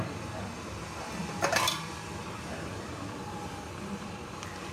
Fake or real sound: fake